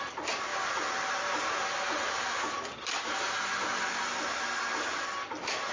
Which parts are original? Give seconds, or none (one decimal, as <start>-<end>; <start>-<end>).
0.0-5.7